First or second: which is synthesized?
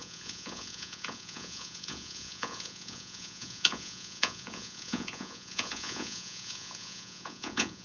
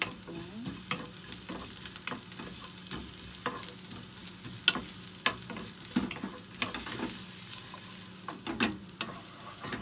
first